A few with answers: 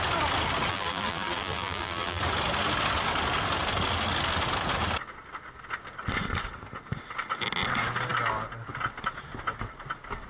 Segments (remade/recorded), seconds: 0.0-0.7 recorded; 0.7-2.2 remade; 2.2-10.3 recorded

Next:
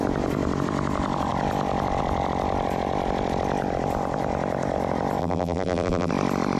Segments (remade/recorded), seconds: 0.0-5.2 recorded; 5.2-6.1 remade; 6.1-6.6 recorded

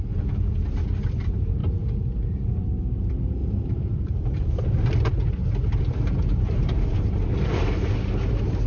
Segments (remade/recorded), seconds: 0.0-1.6 recorded; 1.6-2.5 remade; 2.5-3.4 recorded; 3.4-4.8 remade; 4.8-5.7 recorded; 5.7-7.8 remade; 7.8-8.7 recorded

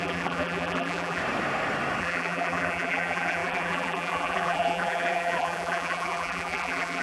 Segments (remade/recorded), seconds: 0.0-1.2 remade; 1.2-2.0 recorded; 2.0-7.0 remade

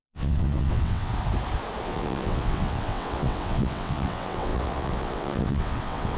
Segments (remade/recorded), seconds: 0.0-1.1 remade; 1.1-1.8 recorded; 1.8-6.2 remade

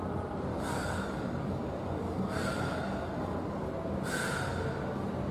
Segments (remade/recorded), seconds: 0.0-0.5 recorded; 0.5-3.7 remade; 3.7-5.3 recorded